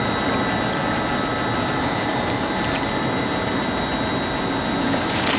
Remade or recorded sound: recorded